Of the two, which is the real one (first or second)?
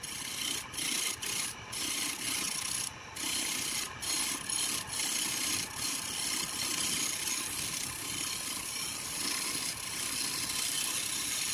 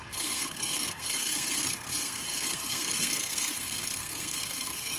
first